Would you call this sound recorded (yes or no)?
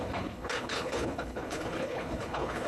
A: no